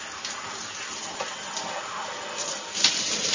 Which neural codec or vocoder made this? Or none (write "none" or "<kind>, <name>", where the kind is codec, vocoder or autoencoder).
none